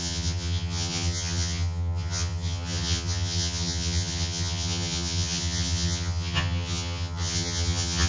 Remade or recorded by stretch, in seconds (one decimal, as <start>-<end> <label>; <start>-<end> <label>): 0.0-8.1 remade